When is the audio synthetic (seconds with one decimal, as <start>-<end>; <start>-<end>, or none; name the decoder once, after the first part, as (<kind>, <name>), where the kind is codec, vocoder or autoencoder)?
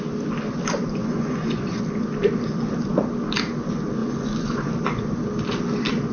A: 1.0-1.8 (vocoder, Vocos); 4.0-4.7